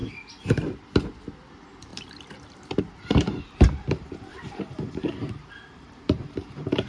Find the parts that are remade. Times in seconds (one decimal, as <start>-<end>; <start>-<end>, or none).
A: 1.5-6.9